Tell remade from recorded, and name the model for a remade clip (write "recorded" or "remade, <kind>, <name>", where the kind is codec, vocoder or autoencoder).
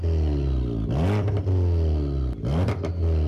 recorded